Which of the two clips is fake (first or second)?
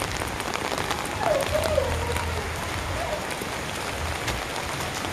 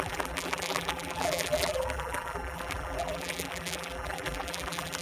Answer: second